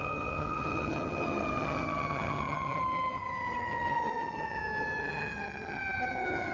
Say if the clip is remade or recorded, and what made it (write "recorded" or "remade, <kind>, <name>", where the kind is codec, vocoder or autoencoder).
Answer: remade, vocoder, HiFi-GAN